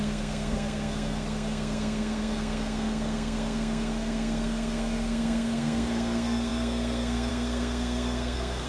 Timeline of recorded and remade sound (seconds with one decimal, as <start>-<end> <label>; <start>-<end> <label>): 0.0-8.7 remade